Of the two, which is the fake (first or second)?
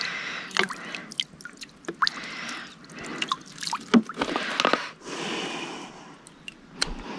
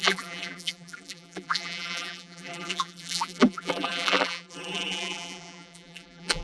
second